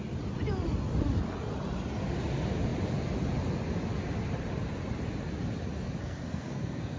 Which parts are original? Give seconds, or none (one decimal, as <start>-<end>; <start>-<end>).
0.0-6.0